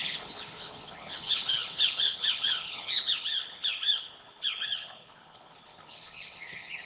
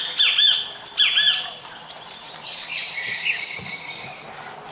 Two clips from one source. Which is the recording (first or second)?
second